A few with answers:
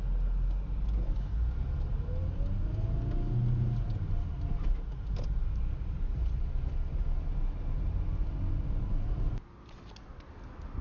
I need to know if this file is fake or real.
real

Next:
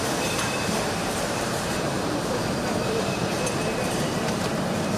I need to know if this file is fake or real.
fake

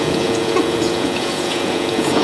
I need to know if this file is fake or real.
fake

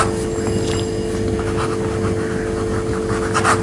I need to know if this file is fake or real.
real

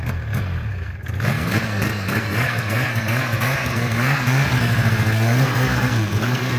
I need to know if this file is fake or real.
fake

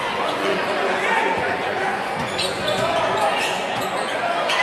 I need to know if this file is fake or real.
fake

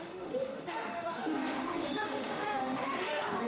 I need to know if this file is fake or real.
fake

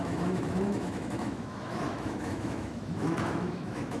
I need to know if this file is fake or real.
fake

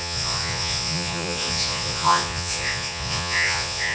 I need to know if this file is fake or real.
fake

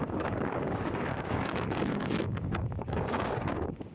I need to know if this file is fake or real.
fake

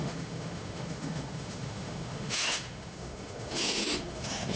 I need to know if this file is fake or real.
fake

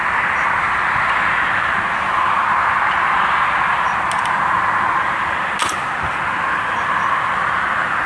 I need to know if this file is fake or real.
real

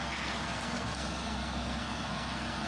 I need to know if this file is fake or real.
fake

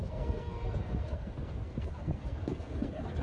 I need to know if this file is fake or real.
fake